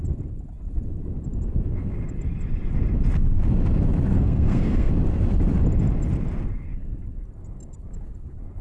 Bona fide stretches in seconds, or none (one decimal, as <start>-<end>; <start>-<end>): 0.0-4.1; 4.9-8.6